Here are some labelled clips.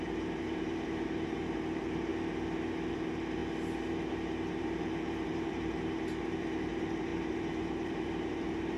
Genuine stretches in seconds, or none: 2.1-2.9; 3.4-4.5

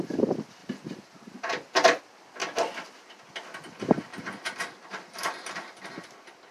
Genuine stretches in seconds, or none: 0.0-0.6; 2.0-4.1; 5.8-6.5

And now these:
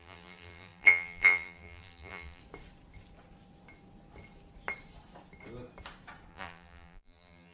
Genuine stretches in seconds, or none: 2.4-6.3